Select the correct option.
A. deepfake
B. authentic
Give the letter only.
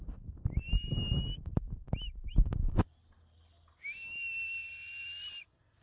B